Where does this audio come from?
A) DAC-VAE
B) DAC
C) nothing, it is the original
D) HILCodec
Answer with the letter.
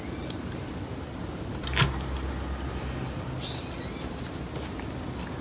C